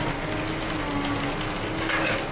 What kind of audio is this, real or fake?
real